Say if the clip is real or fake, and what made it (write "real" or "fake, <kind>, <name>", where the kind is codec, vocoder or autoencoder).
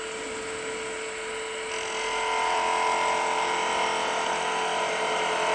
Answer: real